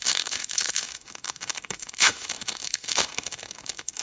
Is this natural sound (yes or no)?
no